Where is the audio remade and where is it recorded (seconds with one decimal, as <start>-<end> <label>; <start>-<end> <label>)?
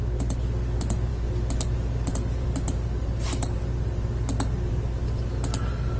0.0-6.0 recorded